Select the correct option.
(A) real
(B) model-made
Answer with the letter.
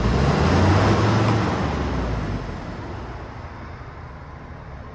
A